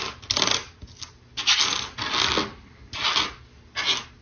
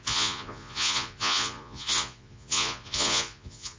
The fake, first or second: second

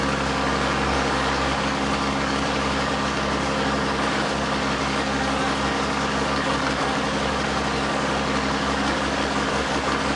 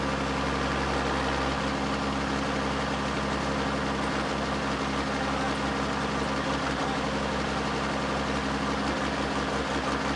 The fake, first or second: first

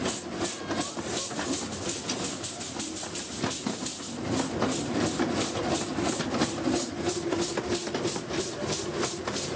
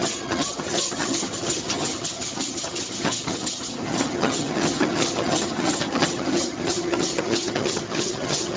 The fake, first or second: second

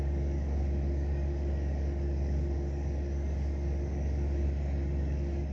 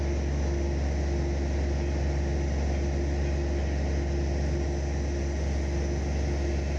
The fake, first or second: first